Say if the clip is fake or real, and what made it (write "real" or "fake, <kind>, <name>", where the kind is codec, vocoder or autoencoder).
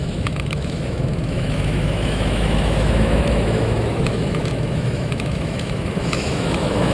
fake, autoencoder, DAC-VAE